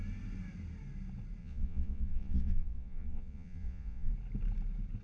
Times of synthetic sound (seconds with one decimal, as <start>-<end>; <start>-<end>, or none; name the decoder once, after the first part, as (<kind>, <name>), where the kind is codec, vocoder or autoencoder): 1.4-4.1 (vocoder, Vocos)